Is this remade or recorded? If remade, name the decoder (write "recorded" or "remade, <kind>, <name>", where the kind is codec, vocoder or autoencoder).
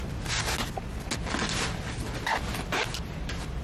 recorded